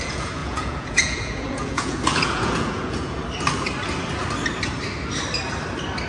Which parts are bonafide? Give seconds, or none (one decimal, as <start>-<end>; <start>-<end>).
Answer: 3.2-6.1